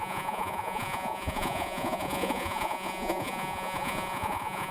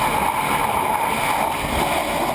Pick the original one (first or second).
second